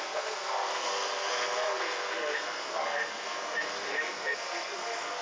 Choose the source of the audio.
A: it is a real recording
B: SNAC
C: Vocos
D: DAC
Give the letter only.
B